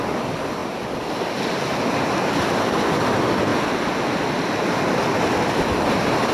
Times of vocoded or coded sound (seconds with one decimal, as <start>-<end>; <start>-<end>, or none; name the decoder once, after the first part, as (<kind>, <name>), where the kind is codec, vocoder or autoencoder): none